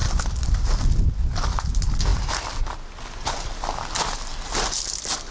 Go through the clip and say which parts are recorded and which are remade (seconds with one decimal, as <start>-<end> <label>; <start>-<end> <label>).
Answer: 0.0-1.1 remade; 1.1-5.3 recorded